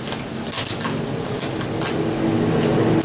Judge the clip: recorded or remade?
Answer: recorded